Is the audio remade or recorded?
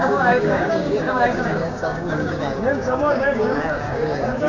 remade